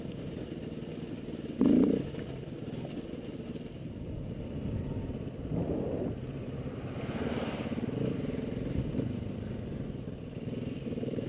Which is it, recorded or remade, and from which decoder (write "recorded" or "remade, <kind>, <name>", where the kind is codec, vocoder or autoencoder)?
recorded